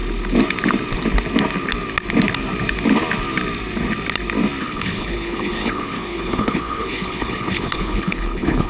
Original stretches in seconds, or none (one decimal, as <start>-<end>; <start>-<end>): 0.0-4.6